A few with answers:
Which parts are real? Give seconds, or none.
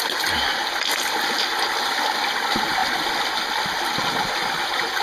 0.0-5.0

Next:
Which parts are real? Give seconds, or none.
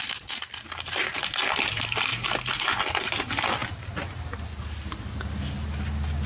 0.0-2.1; 3.2-6.3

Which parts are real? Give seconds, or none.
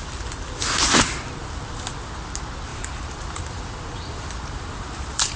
0.0-2.7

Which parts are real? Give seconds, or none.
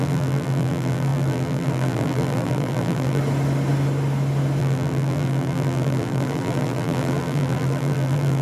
3.2-4.6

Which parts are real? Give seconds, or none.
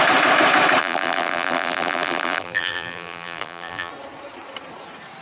0.0-0.8; 3.9-5.2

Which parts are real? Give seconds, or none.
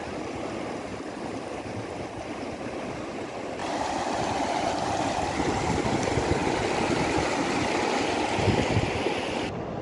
0.0-0.9; 3.1-3.6; 5.2-9.8